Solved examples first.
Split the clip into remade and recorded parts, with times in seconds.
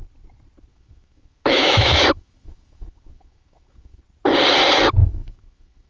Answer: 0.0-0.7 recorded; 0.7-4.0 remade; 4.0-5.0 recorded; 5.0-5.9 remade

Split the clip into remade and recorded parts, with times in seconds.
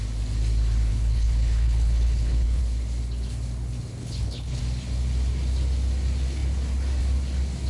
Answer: 0.0-0.9 recorded; 0.9-2.6 remade; 2.6-4.0 recorded; 4.0-4.6 remade; 4.6-7.7 recorded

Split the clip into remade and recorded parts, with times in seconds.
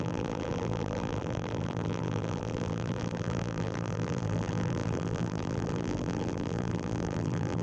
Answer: 0.0-7.6 remade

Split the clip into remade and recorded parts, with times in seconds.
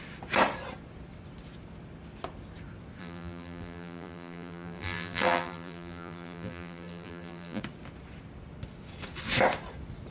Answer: 0.0-3.0 recorded; 3.0-7.6 remade; 7.6-10.1 recorded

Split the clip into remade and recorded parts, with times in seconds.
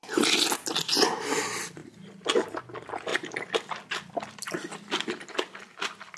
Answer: 0.0-6.2 recorded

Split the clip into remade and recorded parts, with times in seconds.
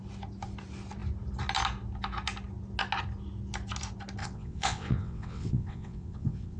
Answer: 0.0-4.2 recorded; 4.2-6.6 remade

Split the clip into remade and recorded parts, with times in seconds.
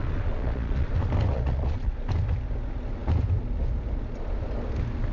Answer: 0.0-0.9 remade; 0.9-1.3 recorded; 1.3-1.9 remade; 1.9-5.1 recorded